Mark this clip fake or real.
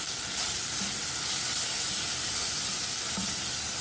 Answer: real